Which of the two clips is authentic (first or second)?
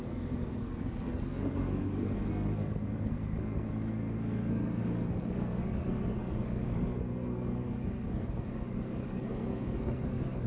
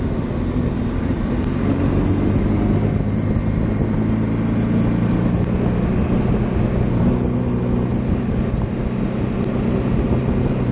second